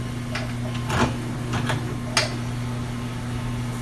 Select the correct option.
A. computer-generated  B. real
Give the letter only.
B